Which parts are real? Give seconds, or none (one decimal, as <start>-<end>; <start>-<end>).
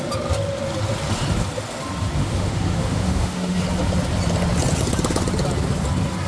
0.0-2.2; 3.6-6.3